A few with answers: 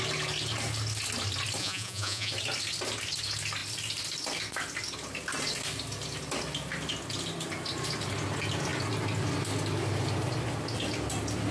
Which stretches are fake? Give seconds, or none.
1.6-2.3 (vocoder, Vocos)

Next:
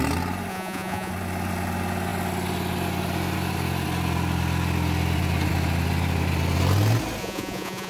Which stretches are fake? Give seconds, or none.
0.5-1.1 (vocoder, Vocos); 7.2-7.9

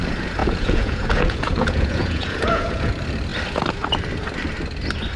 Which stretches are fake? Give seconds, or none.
0.4-2.9 (vocoder, Vocos)

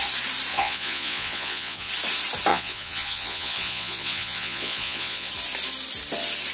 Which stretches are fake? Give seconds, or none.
0.5-1.9 (vocoder, Vocos); 2.5-5.3